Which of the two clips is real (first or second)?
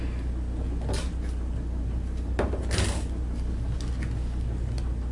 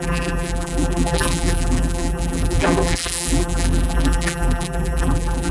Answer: first